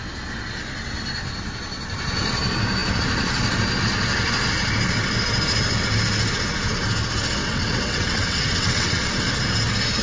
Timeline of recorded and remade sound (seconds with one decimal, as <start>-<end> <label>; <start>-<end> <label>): 0.0-7.4 recorded; 7.4-9.0 remade; 9.0-10.0 recorded